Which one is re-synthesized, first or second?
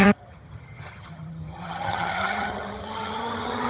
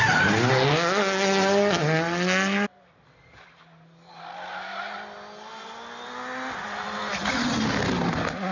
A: first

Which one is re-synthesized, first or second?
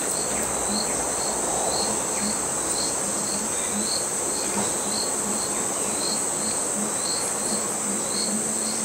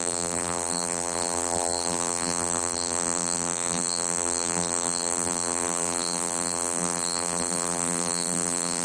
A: second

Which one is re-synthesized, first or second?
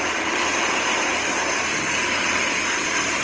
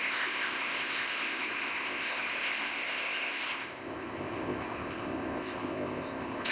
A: second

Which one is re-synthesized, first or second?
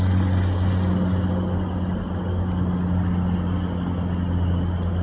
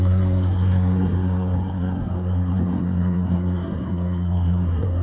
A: second